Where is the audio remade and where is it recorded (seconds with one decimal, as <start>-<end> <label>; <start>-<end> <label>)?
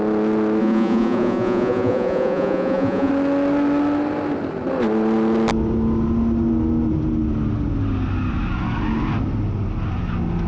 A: 0.0-0.6 recorded; 0.6-3.1 remade; 3.1-10.5 recorded